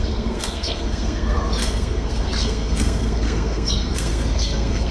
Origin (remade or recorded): remade